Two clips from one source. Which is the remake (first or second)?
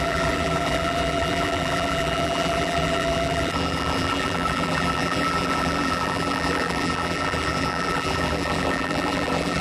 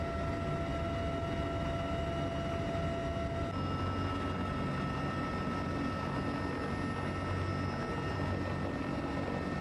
first